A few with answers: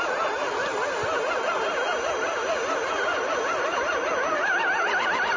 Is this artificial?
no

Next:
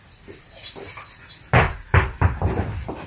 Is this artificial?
yes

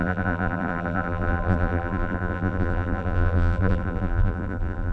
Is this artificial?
yes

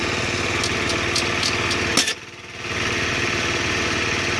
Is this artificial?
no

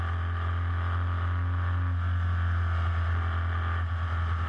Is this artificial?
no